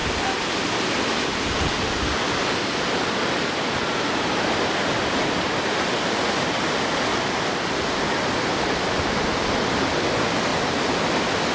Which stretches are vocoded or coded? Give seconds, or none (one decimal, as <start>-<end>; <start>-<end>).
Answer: none